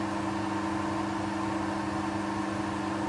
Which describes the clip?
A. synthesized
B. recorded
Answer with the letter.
B